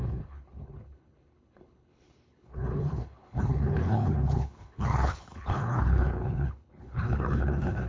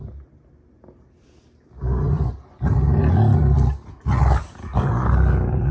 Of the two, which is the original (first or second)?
second